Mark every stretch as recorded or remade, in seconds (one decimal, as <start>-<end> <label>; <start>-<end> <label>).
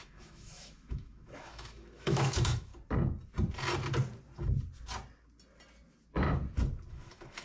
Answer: 0.0-2.7 remade; 2.7-6.9 recorded; 6.9-7.4 remade